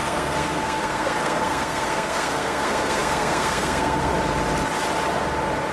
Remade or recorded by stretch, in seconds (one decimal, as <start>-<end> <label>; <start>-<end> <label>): 0.0-4.1 remade; 4.1-5.7 recorded

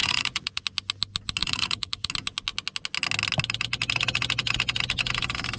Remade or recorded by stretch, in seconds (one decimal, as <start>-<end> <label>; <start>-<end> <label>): 0.0-0.6 remade; 0.6-1.4 recorded; 1.4-2.1 remade; 2.1-5.6 recorded

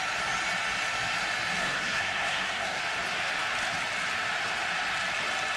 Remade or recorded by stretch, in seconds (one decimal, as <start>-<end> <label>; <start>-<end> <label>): 0.0-1.6 recorded; 1.6-2.8 remade; 2.8-5.6 recorded